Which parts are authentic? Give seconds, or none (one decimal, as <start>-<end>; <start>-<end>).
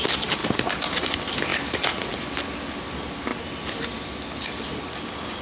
0.0-5.4